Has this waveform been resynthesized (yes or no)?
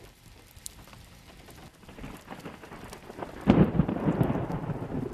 yes